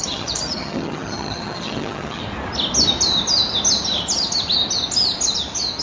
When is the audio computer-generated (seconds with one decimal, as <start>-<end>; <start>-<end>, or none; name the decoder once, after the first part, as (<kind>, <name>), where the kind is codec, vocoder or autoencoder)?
0.0-2.2 (vocoder, HiFi-GAN)